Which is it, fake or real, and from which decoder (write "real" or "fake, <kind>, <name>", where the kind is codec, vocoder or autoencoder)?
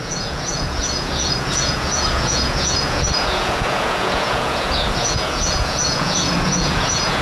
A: fake, vocoder, Vocos